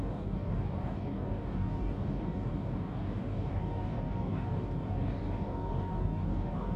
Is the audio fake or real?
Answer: fake